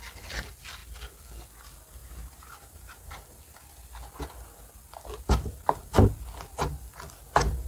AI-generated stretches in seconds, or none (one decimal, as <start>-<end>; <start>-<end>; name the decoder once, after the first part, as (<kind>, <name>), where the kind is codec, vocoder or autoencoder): 2.0-3.1 (vocoder, BigVGAN v2)